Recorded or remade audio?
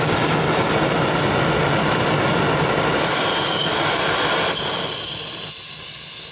recorded